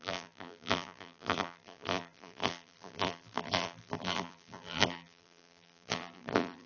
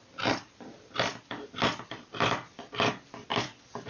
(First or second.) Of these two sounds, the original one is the second